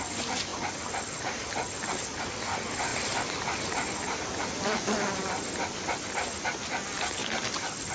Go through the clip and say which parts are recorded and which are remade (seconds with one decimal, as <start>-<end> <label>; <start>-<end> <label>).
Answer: 0.0-7.9 recorded